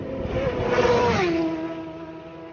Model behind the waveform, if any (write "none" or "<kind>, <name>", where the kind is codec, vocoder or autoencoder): none